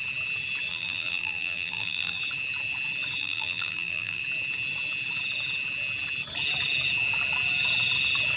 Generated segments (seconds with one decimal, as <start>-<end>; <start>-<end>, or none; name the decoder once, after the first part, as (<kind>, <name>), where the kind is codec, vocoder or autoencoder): 0.7-2.2 (vocoder, BigVGAN v2); 3.2-4.2